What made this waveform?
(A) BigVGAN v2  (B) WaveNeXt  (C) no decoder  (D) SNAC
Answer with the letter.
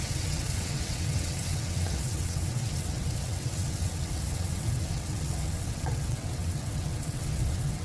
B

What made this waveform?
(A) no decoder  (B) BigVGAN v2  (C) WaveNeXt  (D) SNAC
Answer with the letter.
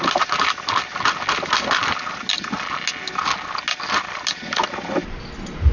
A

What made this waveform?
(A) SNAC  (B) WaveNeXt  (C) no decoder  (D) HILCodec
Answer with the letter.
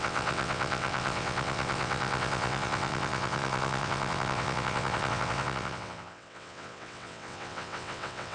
B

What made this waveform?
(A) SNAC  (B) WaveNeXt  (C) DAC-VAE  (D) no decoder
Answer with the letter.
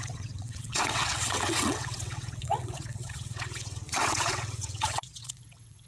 B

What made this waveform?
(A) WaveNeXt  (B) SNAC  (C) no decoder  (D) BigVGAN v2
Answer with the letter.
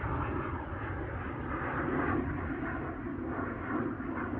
C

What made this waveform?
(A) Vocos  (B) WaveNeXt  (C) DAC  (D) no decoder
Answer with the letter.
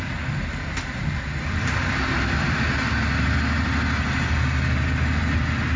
D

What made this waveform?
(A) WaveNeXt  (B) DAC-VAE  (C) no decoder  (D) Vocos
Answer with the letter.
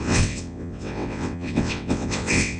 A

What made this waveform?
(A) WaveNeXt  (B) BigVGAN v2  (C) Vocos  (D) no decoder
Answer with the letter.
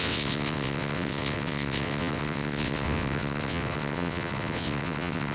A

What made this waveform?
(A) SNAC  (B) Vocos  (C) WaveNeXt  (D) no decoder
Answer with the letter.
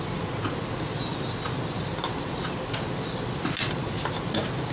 D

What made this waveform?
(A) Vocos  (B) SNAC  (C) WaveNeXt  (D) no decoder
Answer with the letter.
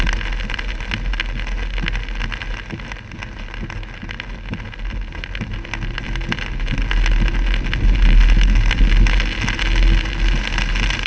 D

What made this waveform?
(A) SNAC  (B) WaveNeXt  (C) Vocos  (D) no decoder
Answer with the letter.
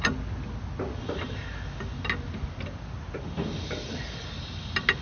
D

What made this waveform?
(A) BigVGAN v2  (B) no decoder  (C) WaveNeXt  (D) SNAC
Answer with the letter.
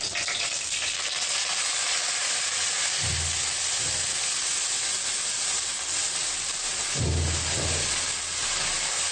B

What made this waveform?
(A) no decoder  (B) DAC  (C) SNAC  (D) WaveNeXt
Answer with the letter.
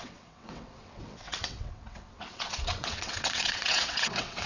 D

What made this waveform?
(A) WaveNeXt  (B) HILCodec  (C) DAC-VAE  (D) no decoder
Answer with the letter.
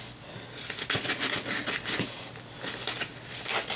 D